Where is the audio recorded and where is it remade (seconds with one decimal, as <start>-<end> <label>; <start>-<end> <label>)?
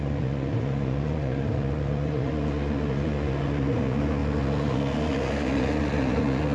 0.0-6.5 remade